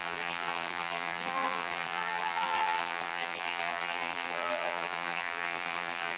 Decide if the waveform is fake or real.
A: fake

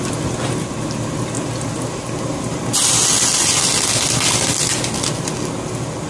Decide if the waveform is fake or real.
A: real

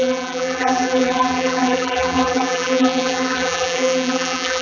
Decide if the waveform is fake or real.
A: fake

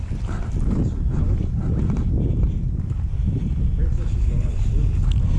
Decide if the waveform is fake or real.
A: real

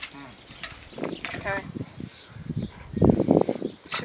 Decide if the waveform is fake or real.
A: fake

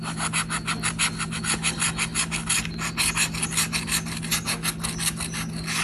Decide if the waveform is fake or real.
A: real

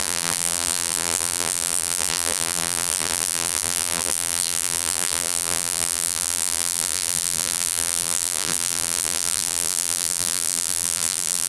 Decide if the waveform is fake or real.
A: fake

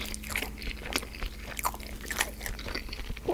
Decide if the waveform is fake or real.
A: real